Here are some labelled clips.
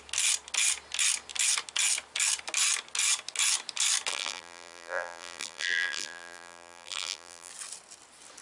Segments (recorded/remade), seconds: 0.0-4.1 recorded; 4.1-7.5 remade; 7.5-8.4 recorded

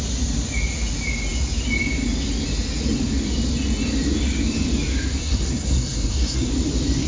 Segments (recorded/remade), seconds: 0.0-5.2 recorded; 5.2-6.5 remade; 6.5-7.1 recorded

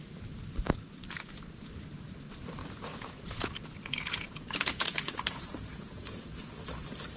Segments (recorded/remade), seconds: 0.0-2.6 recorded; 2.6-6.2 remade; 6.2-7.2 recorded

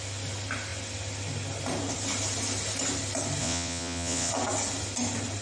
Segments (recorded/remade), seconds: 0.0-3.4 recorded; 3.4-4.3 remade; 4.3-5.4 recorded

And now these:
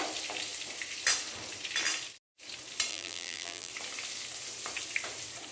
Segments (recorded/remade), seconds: 0.0-2.9 recorded; 2.9-3.7 remade; 3.7-5.5 recorded

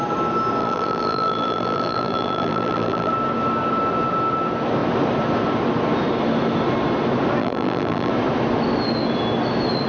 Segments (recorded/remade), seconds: 0.0-0.6 recorded; 0.6-3.1 remade; 3.1-7.4 recorded; 7.4-8.1 remade; 8.1-9.9 recorded